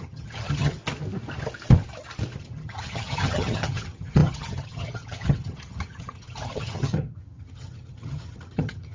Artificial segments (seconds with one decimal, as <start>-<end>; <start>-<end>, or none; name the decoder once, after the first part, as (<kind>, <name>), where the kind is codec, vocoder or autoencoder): 0.0-0.8 (vocoder, HiFi-GAN); 2.4-8.9